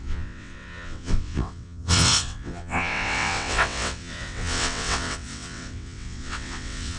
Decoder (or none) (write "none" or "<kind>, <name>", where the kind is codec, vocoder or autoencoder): vocoder, WaveNeXt